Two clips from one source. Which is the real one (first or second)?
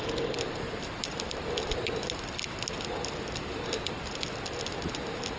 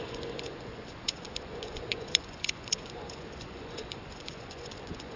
first